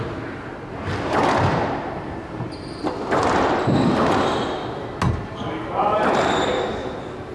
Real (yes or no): yes